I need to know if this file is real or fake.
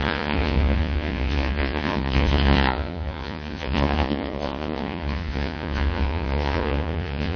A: fake